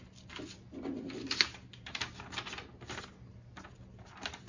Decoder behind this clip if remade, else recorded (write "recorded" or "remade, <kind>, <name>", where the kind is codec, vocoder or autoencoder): recorded